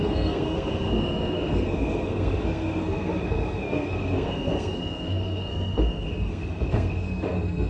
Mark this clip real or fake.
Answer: fake